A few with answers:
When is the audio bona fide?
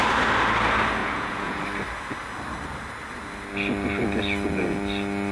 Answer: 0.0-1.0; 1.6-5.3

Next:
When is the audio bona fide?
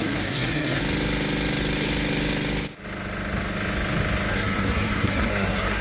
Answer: 0.8-4.3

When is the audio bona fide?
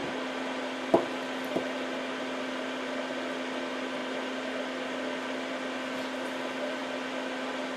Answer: 0.0-7.8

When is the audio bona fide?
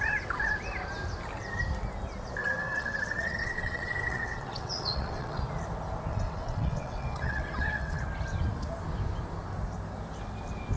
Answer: 0.0-2.4; 5.4-6.1; 8.0-10.8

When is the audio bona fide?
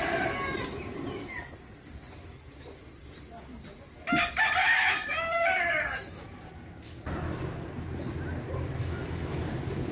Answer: 0.0-4.6; 6.3-8.8; 9.4-9.9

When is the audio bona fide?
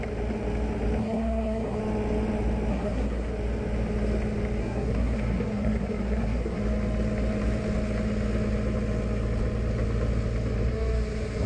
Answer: 0.0-1.0; 1.8-2.7; 3.3-4.6; 6.6-11.5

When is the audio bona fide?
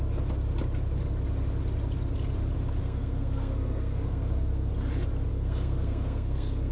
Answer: 0.0-2.8; 4.7-5.3